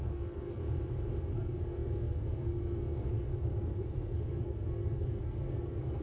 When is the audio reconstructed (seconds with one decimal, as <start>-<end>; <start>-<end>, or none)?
0.0-0.6; 1.2-6.0